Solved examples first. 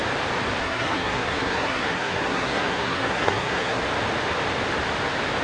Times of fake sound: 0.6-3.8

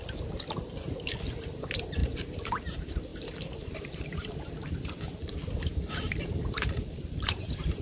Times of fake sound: 1.3-7.8

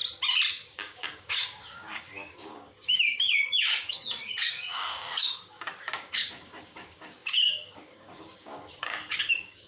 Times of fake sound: 0.5-9.7

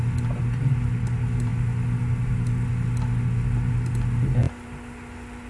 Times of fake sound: none

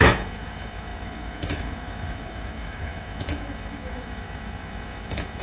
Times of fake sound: 0.0-5.4

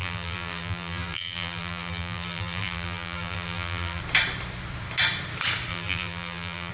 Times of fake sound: 0.0-4.0; 5.7-6.7

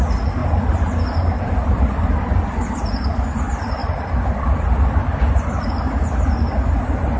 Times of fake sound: 0.4-2.4; 3.8-5.7

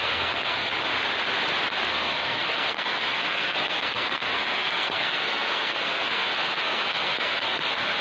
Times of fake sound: 0.0-0.7; 1.9-8.0